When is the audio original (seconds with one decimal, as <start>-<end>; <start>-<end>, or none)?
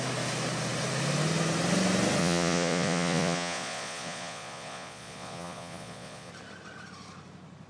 0.0-2.2; 6.3-7.7